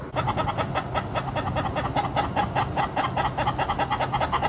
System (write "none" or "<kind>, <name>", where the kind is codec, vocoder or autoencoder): none